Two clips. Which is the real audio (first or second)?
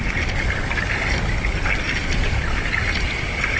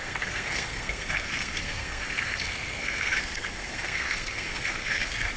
first